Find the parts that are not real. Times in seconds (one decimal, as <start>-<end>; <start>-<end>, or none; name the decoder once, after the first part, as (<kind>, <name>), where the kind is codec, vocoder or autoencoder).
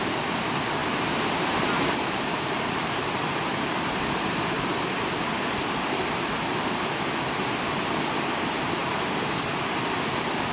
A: 0.8-4.7 (vocoder, BigVGAN v2)